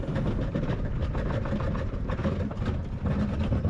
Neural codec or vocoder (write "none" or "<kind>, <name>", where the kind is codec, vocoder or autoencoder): none